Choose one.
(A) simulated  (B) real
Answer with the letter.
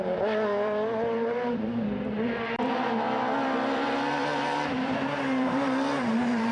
A